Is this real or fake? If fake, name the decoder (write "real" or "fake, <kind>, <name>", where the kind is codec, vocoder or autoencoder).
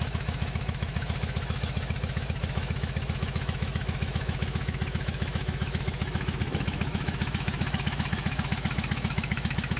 fake, autoencoder, DAC-VAE